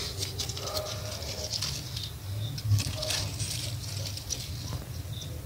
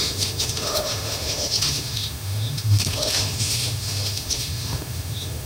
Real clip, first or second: first